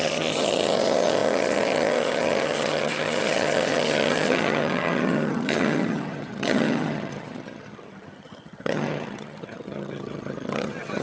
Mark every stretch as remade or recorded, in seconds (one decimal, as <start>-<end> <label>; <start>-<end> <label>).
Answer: 0.0-11.0 remade